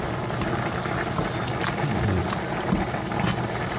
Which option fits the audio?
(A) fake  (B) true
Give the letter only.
B